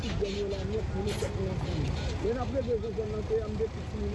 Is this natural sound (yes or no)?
yes